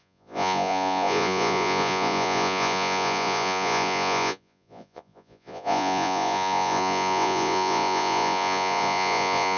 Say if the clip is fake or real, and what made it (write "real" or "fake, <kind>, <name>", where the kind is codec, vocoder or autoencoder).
fake, vocoder, Vocos